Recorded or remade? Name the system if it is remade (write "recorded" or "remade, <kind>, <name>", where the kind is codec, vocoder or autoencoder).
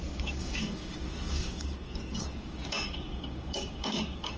remade, codec, DAC